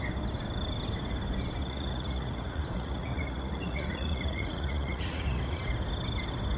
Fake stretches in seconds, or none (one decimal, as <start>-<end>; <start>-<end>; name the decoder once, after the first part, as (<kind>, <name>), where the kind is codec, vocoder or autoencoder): 1.6-5.6 (vocoder, Vocos)